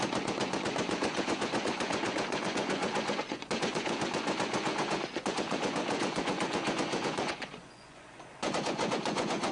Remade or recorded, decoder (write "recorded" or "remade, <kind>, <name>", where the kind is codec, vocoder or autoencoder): remade, vocoder, Vocos